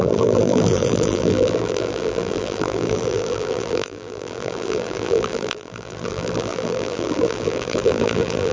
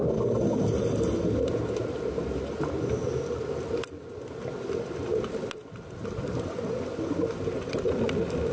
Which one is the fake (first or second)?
first